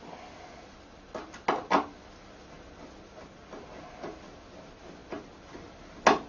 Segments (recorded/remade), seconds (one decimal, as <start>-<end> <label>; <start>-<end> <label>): 0.0-6.3 recorded